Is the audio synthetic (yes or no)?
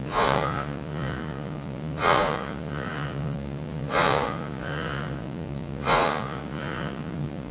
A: yes